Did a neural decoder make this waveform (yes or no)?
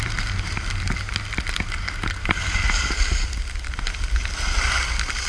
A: no